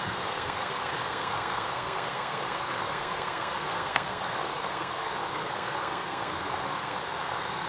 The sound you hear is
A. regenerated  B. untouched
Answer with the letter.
A